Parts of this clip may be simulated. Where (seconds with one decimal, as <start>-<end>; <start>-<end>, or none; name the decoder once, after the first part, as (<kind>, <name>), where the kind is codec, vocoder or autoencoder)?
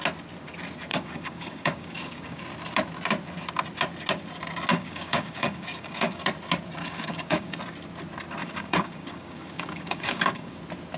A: 0.9-2.4 (codec, DAC); 4.7-6.2; 6.8-7.6; 8.4-10.6